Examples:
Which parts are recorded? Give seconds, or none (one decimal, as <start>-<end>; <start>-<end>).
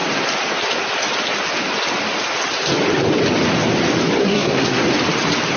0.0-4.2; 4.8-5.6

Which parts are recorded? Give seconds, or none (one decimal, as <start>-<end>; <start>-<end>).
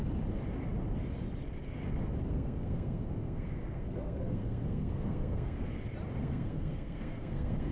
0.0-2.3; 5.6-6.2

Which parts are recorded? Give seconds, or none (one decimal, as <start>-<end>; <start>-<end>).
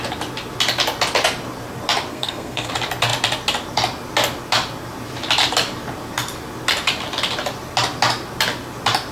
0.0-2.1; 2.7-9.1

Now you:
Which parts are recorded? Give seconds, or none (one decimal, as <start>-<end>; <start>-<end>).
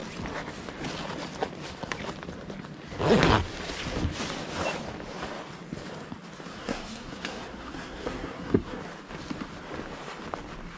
0.0-6.5; 8.8-10.8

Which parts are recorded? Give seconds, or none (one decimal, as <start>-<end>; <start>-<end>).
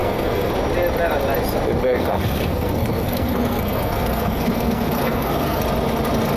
0.5-1.8; 5.6-6.4